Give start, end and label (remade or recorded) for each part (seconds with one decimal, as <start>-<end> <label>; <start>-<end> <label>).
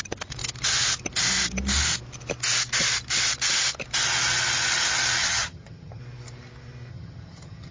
0.0-5.2 recorded; 5.2-6.0 remade; 6.0-6.9 recorded; 6.9-7.7 remade